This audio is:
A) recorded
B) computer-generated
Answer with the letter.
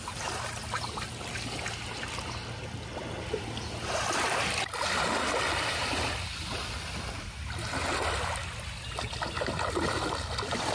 A